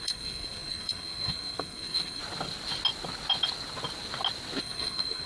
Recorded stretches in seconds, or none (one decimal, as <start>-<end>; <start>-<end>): 2.2-4.6

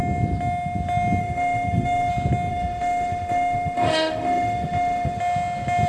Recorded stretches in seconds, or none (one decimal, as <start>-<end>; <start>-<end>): 0.0-1.2; 2.1-2.5; 5.2-5.9

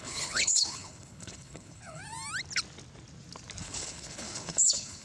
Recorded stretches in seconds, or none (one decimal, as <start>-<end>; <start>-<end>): 2.0-3.6

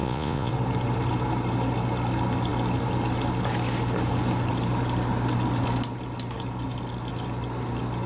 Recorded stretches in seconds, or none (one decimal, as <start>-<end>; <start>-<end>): 0.5-8.1

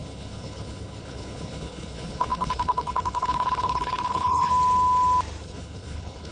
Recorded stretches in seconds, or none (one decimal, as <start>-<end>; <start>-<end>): 4.5-5.4

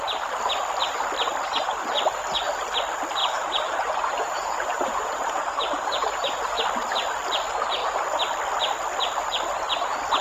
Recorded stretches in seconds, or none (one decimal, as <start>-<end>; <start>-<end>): 0.0-3.2; 6.4-10.2